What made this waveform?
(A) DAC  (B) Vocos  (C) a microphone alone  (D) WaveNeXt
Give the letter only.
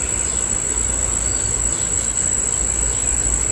C